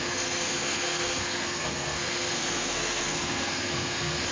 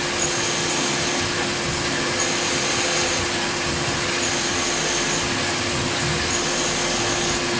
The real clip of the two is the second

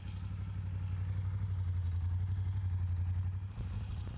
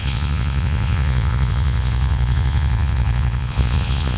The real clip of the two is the first